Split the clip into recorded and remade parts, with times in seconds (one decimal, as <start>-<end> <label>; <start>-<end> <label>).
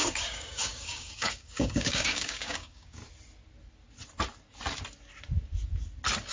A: 0.0-3.0 remade; 3.0-6.3 recorded